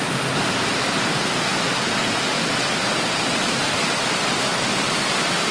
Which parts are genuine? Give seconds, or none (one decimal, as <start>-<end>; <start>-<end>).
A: 0.0-5.5